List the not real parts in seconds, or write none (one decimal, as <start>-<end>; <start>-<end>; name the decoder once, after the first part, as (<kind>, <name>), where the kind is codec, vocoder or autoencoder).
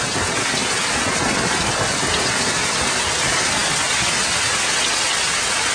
none